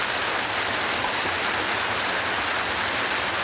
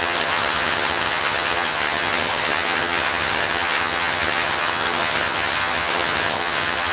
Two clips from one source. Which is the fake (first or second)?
second